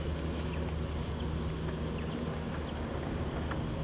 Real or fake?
real